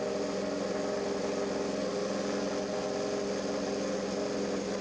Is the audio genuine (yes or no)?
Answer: yes